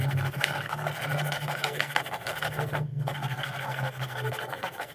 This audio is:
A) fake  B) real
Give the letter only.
A